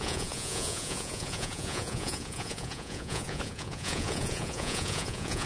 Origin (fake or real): fake